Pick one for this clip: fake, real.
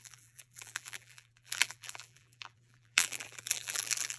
fake